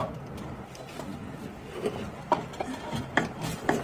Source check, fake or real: real